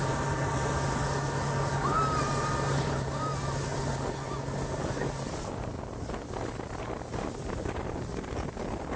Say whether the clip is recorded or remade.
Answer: recorded